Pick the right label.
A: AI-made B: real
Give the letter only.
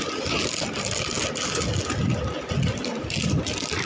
B